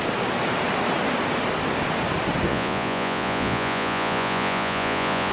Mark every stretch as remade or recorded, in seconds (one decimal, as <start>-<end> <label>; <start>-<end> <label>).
0.0-2.5 recorded; 2.5-5.3 remade